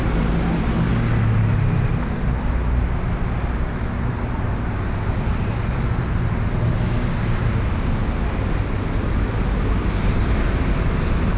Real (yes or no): yes